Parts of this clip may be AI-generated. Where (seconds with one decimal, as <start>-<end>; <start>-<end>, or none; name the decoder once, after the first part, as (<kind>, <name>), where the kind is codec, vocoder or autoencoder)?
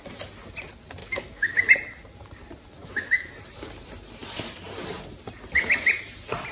1.0-1.6 (autoencoder, DAC-VAE); 2.8-3.3